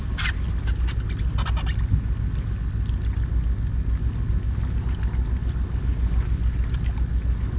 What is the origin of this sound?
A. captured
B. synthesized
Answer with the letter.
A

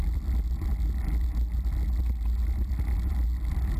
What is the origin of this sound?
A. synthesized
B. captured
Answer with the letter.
B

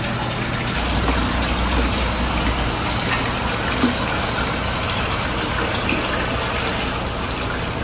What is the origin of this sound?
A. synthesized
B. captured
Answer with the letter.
B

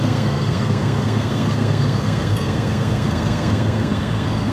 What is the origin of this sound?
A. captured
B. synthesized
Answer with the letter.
B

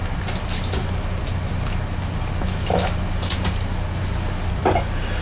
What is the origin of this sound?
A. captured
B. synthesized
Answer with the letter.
A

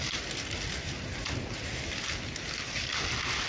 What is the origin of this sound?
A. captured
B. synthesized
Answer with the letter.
A